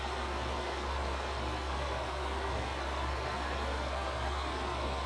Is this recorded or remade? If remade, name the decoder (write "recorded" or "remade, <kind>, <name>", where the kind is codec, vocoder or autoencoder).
remade, codec, SNAC